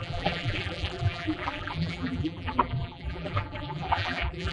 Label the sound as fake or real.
fake